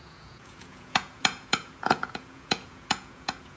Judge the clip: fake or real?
fake